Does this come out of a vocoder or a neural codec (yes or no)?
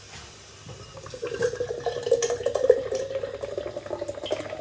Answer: no